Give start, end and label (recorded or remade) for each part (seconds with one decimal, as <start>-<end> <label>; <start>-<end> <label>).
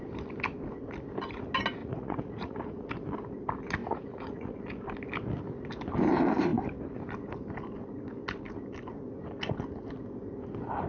0.0-1.8 recorded; 1.8-2.9 remade; 2.9-3.8 recorded; 3.8-4.6 remade; 4.6-10.9 recorded